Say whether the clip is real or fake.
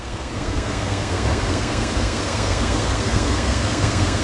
fake